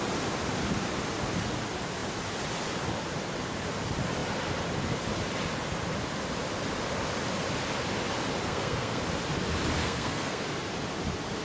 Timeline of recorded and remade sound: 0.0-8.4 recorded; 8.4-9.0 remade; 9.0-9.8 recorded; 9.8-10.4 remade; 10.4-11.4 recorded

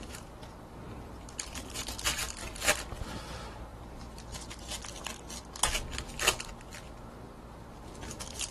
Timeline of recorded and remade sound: 0.0-4.3 remade; 4.3-7.8 recorded; 7.8-8.5 remade

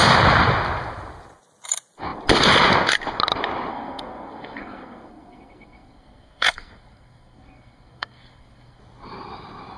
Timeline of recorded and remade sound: 0.0-3.7 recorded; 3.7-8.8 remade; 8.8-9.8 recorded